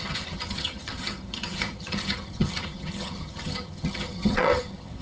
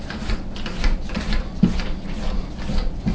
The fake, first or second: first